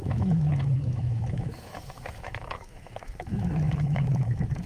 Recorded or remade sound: remade